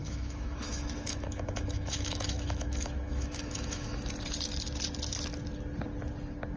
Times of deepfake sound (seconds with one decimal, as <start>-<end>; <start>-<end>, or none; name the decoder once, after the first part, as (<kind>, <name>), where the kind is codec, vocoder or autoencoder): 0.0-4.0 (autoencoder, DAC-VAE)